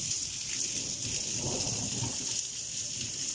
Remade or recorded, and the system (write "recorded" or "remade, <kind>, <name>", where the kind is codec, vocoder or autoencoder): recorded